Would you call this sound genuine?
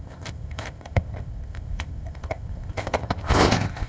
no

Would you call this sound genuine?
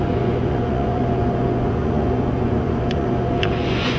no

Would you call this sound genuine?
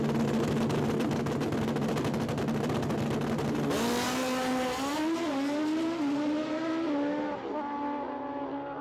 yes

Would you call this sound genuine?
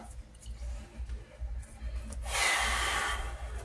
yes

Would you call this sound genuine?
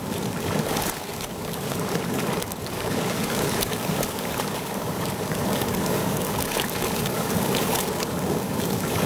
no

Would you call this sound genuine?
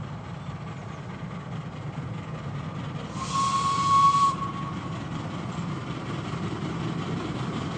yes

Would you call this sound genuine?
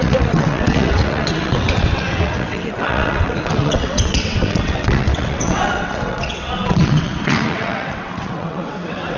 no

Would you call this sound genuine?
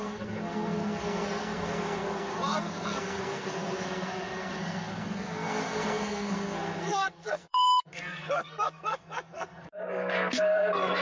no